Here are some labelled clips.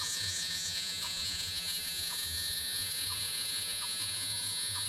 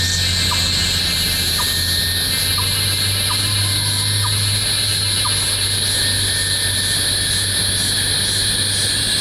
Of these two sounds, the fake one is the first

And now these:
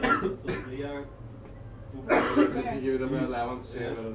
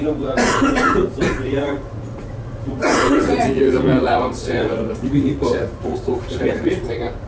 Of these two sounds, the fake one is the second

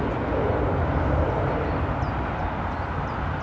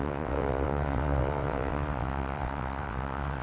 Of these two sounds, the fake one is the second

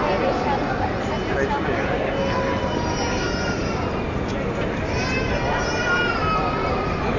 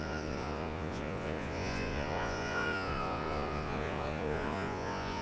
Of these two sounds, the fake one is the second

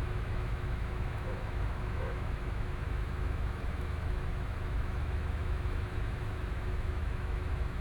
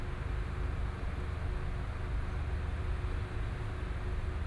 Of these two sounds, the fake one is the first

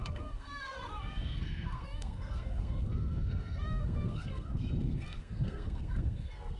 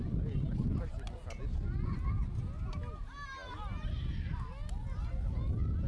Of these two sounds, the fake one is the first